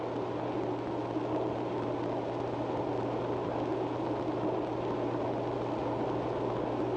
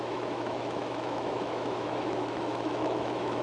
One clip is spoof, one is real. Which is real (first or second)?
first